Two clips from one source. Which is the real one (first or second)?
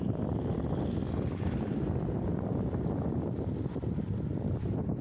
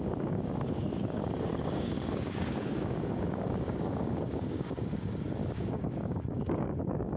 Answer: first